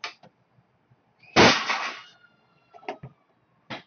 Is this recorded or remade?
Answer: recorded